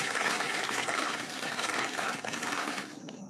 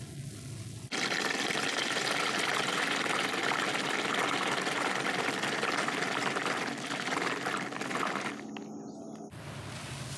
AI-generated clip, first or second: first